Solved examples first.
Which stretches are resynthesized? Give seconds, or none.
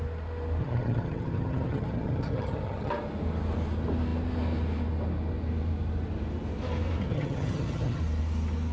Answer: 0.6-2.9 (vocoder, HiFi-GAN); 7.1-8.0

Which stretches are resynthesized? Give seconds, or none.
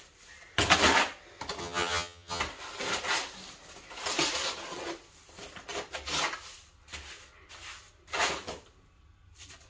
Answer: 1.6-2.4 (vocoder, HiFi-GAN)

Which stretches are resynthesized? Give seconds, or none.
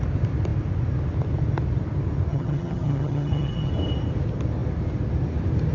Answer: 2.3-3.7 (vocoder, HiFi-GAN)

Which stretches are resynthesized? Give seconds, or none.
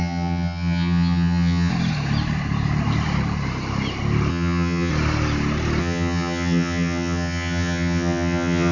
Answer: 0.0-1.7 (vocoder, HiFi-GAN); 4.3-4.9; 5.8-8.7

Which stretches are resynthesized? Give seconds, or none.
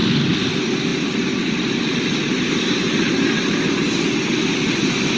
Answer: none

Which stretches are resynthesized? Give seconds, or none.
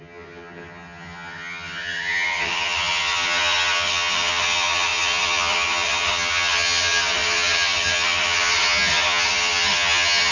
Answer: 0.0-10.3 (vocoder, HiFi-GAN)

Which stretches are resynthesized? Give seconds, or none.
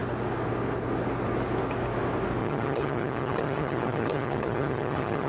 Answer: 2.4-5.3 (vocoder, HiFi-GAN)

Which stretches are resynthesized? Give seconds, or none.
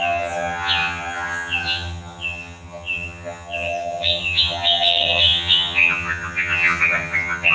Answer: 0.0-7.5 (vocoder, HiFi-GAN)